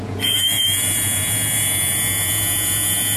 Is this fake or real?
fake